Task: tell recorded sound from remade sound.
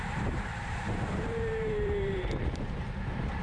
remade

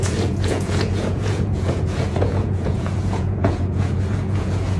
remade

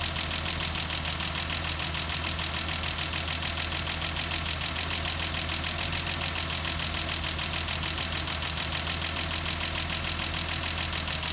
recorded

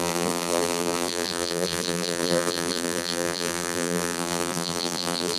remade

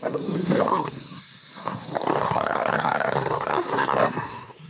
remade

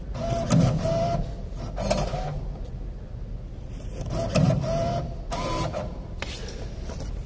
recorded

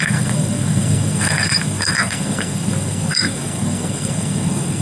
remade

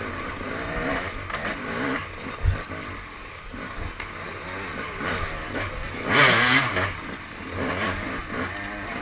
recorded